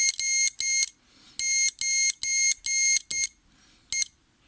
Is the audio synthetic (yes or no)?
no